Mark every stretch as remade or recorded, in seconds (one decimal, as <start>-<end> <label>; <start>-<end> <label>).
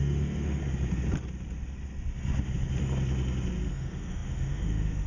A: 0.0-0.6 remade; 0.6-3.7 recorded; 3.7-5.1 remade